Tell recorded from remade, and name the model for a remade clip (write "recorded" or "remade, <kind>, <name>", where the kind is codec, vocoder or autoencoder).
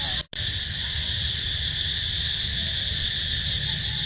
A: recorded